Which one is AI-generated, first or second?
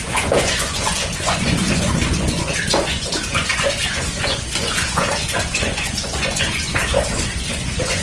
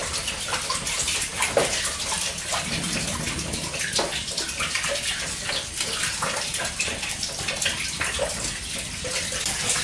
first